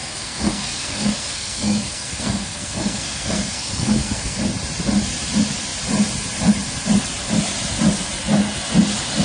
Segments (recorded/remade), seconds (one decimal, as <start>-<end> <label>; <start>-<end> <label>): 0.0-4.4 remade; 4.4-9.2 recorded